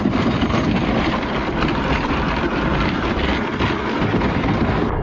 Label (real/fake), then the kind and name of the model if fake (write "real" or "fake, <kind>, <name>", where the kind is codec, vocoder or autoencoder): real